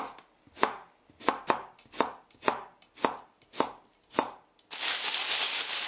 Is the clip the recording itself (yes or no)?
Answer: yes